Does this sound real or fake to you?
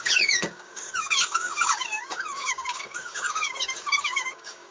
fake